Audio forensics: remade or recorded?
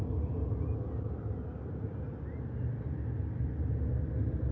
recorded